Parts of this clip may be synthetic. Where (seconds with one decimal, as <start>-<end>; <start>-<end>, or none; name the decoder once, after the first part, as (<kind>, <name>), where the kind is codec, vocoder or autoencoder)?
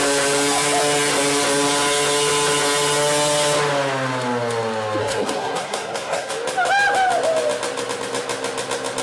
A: 5.0-6.3 (codec, SNAC)